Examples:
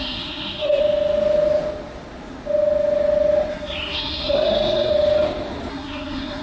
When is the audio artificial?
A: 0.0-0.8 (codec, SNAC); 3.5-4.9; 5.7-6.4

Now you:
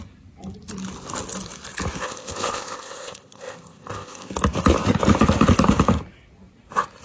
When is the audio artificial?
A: 2.0-4.3 (codec, ZipCodec)

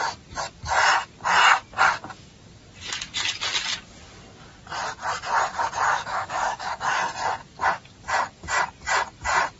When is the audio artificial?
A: 5.9-7.0 (codec, DAC)

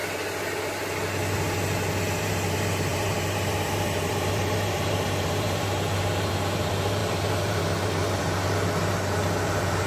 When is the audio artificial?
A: 2.2-9.9 (vocoder, BigVGAN v2)

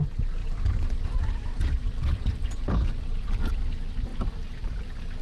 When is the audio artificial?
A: 0.4-3.5 (vocoder, BigVGAN v2)

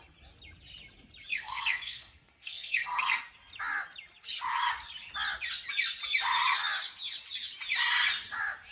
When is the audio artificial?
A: 1.3-3.2 (codec, SNAC)

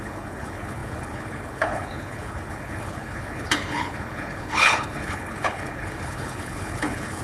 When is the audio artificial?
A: 0.0-7.2 (codec, HILCodec)

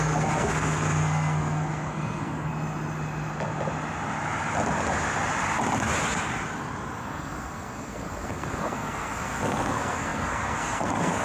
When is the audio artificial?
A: 0.0-2.5 (codec, SNAC); 7.0-11.2